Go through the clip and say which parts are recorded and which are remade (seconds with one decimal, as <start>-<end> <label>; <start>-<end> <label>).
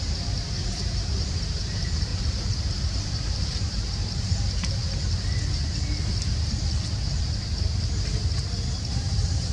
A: 0.0-2.1 remade; 2.1-2.7 recorded; 2.7-4.8 remade; 4.8-8.8 recorded; 8.8-9.5 remade